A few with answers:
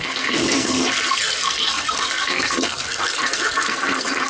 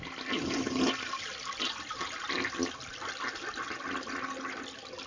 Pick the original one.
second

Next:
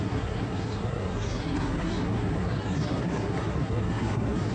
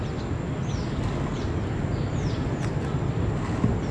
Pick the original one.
second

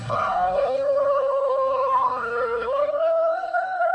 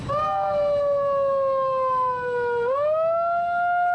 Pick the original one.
second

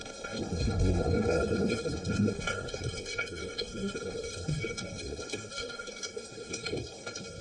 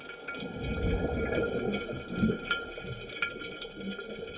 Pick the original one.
second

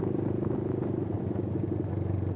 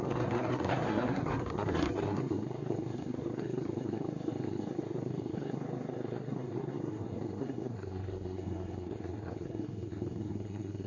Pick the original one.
first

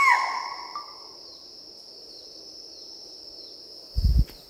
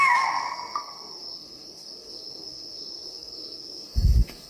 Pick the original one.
first